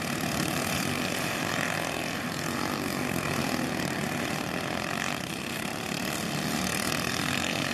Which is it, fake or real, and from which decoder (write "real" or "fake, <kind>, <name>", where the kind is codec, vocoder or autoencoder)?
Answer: fake, vocoder, BigVGAN v2